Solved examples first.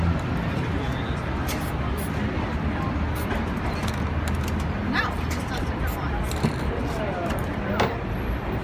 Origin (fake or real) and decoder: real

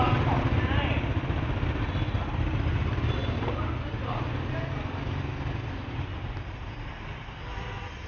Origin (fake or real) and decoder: real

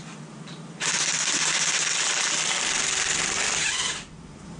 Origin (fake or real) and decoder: real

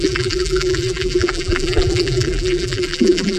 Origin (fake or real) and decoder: fake, vocoder, BigVGAN v2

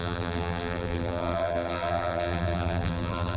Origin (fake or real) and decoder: fake, vocoder, BigVGAN v2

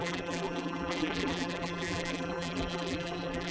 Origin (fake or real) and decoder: fake, vocoder, BigVGAN v2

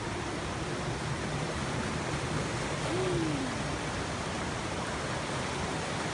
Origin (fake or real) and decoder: real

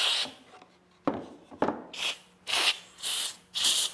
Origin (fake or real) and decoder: real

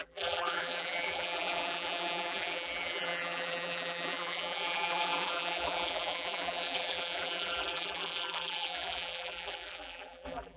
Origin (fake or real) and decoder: fake, vocoder, BigVGAN v2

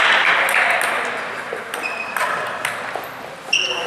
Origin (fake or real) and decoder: real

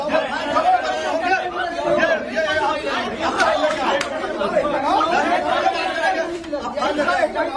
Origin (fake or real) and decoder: fake, vocoder, BigVGAN v2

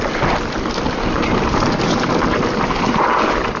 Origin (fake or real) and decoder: real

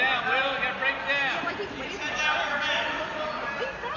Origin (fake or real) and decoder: real